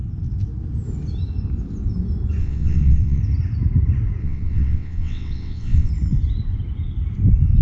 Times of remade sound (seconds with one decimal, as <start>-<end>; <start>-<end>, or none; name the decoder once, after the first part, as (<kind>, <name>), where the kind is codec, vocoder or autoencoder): 2.4-3.2 (vocoder, WaveNeXt); 4.2-5.9